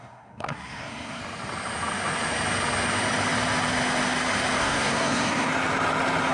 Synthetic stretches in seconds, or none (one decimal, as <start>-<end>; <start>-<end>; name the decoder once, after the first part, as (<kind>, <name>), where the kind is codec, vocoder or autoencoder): 0.0-1.2 (codec, SNAC); 4.6-5.5